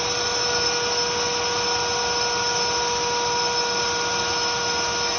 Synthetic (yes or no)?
no